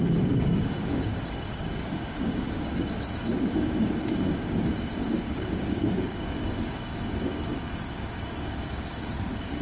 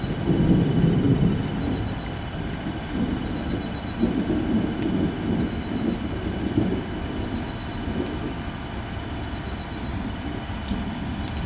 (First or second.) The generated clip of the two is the first